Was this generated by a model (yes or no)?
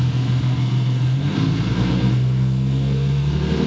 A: yes